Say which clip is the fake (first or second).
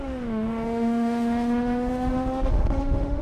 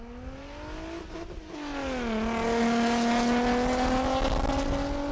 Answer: first